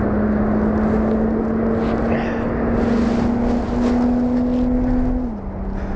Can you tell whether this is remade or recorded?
recorded